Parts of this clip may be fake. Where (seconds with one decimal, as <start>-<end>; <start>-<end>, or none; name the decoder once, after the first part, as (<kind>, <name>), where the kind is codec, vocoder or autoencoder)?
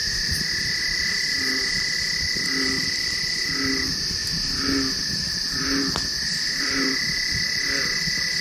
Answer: 0.8-4.2 (vocoder, BigVGAN v2); 5.0-8.4